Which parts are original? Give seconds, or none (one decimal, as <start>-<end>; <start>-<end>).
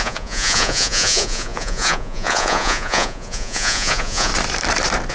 4.3-5.1